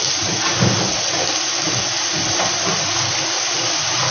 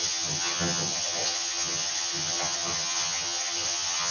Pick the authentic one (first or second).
first